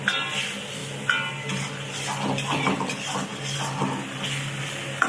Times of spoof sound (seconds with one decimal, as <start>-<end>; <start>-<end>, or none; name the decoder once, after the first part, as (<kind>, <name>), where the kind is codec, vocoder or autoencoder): none